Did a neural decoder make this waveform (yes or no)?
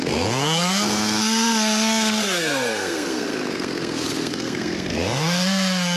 yes